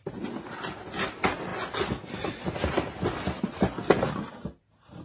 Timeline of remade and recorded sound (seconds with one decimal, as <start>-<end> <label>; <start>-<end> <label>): 0.0-5.0 recorded

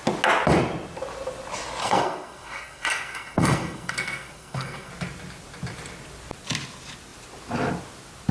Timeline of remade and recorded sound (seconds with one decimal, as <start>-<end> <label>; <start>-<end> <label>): 0.0-1.8 recorded; 1.8-4.9 remade; 4.9-8.3 recorded

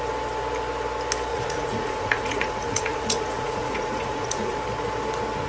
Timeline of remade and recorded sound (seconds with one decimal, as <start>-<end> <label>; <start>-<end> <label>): 0.0-1.3 recorded; 1.3-4.6 remade; 4.6-5.5 recorded